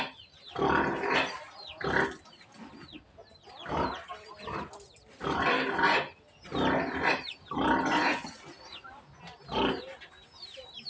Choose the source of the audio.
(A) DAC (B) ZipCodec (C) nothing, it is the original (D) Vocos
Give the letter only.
C